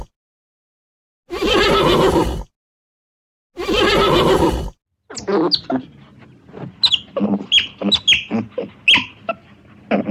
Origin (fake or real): real